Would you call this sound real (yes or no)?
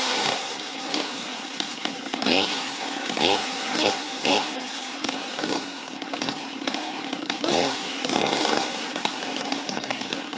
no